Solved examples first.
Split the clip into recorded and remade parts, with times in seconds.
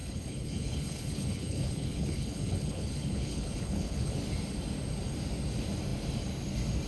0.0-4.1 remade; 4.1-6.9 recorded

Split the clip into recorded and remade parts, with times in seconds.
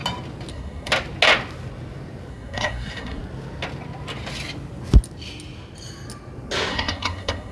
0.0-0.5 recorded; 0.5-0.9 remade; 0.9-2.3 recorded; 2.3-3.2 remade; 3.2-6.7 recorded; 6.7-7.5 remade